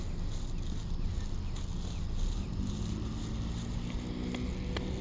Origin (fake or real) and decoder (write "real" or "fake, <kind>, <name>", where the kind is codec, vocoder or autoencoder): real